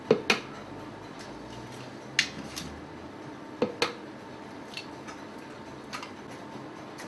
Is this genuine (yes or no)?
yes